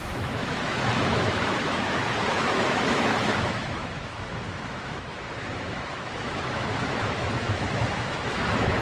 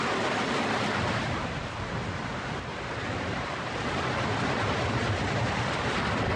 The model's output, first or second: first